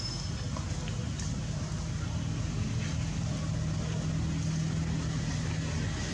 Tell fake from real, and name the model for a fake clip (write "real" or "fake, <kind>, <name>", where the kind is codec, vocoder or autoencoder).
real